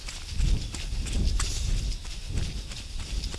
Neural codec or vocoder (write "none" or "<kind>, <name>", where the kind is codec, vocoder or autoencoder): none